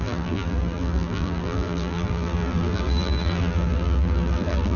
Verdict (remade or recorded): remade